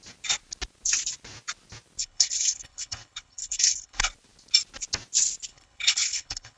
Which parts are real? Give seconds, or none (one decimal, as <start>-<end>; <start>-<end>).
0.0-2.0; 4.1-5.5